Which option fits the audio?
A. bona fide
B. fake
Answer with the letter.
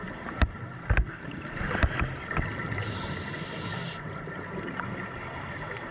A